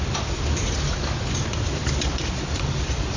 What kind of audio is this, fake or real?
real